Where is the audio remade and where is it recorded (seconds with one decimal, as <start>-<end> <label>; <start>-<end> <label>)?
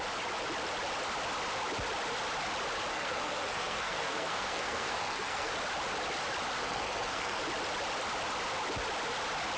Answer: 0.0-2.9 recorded; 2.9-5.5 remade; 5.5-6.6 recorded; 6.6-7.4 remade; 7.4-9.6 recorded